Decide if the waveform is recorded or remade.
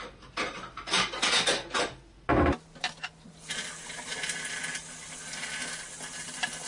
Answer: recorded